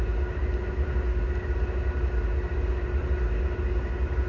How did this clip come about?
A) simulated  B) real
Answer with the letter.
B